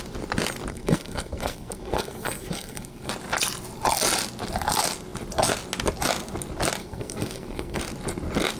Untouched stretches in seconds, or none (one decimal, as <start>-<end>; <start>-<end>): 0.0-0.7; 3.1-6.8; 7.8-8.6